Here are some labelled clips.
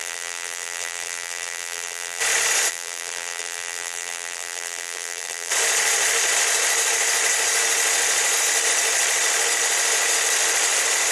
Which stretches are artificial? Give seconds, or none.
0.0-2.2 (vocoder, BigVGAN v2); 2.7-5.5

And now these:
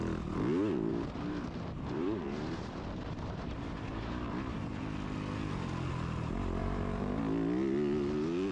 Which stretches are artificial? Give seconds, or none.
0.9-4.8 (vocoder, BigVGAN v2); 6.6-7.2

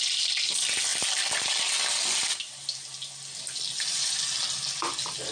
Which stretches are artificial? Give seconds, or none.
none

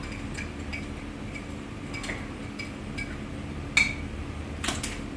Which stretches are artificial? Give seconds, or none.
none

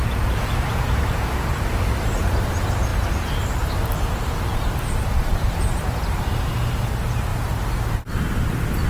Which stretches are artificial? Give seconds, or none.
0.0-8.9 (vocoder, BigVGAN v2)

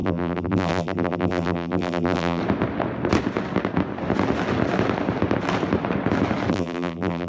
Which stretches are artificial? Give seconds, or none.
0.0-2.4 (vocoder, BigVGAN v2); 6.5-7.3